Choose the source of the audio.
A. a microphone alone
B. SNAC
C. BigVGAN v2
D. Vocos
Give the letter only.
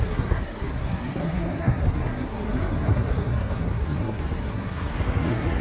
B